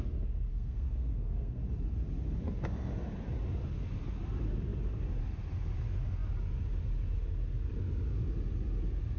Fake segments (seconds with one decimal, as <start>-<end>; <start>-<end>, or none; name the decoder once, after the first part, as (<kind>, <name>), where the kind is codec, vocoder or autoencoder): 0.5-1.6 (codec, SNAC)